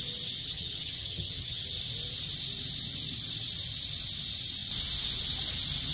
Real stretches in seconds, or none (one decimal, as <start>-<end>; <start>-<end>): 0.0-0.4; 1.6-5.9